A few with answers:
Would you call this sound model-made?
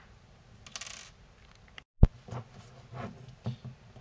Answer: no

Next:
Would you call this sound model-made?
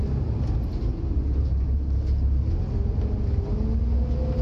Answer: no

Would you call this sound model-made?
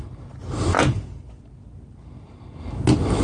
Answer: no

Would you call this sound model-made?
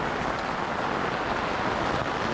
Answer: no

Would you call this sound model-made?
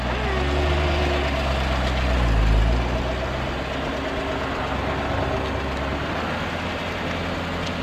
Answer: no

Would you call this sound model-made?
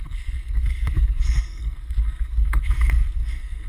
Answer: yes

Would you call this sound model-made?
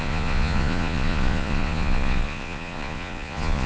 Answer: yes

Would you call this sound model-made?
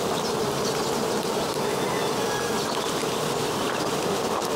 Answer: no